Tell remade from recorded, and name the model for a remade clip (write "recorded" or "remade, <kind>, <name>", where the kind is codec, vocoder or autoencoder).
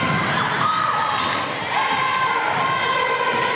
recorded